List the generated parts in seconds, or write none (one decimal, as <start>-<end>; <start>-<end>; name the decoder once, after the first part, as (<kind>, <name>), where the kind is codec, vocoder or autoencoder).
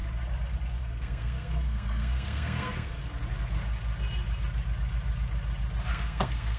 0.8-3.0 (codec, SNAC); 5.9-6.6